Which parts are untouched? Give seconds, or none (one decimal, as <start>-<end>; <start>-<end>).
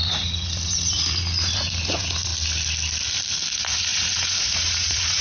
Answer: 2.3-3.5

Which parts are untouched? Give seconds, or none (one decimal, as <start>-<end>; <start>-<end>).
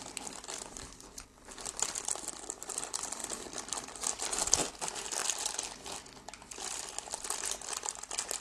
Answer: 0.0-8.4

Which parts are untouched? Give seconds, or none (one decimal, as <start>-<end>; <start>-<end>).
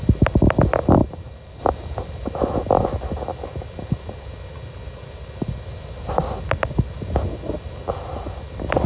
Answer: 0.0-8.9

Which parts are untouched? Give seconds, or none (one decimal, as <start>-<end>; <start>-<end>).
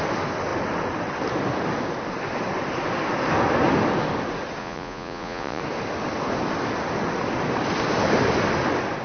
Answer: 0.0-4.6; 5.6-9.0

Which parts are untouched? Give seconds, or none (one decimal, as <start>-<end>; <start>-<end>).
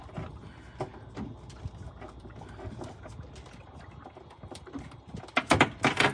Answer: 0.0-6.1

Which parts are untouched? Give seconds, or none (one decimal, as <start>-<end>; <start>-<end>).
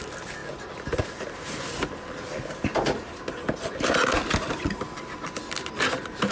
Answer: 0.0-6.3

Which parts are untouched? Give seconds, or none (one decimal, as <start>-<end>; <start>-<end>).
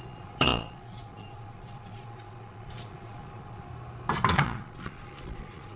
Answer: 3.7-4.3